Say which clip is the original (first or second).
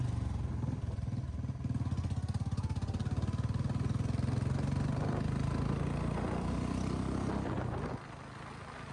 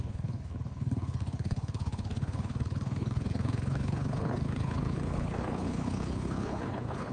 first